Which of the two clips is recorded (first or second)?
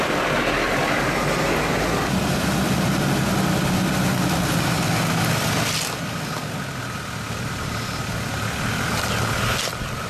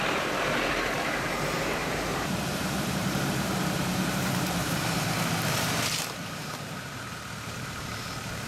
first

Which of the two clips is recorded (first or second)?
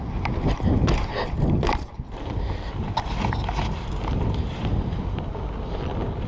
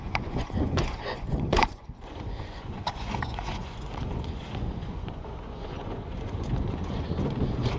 first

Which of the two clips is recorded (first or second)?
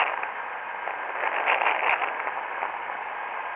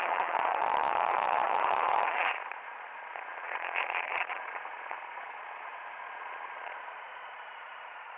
first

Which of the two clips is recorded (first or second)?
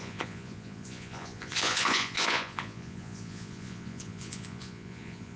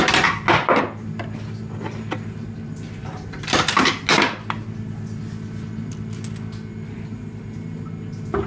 second